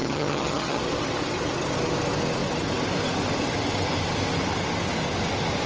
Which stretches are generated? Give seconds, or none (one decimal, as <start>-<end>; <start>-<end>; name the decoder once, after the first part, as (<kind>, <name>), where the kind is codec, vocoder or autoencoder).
0.0-0.8 (vocoder, HiFi-GAN)